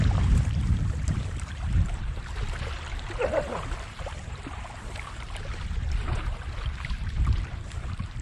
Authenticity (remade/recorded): remade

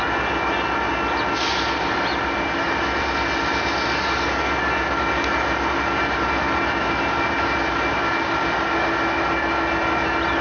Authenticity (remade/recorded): recorded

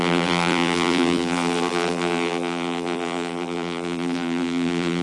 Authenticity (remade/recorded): remade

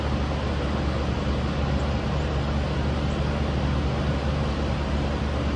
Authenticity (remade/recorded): recorded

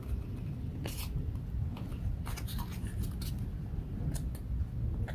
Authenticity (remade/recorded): recorded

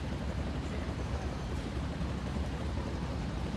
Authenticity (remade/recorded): remade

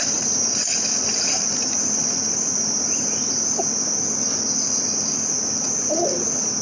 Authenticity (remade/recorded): remade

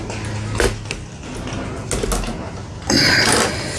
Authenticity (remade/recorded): recorded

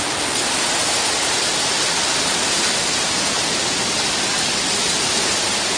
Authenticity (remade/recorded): remade